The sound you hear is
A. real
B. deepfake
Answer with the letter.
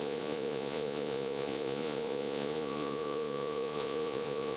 B